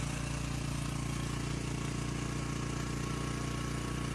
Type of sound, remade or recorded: recorded